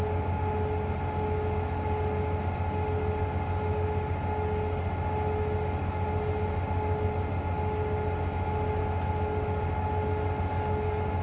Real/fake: real